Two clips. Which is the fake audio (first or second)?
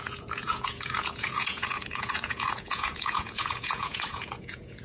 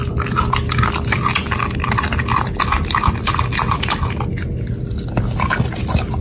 first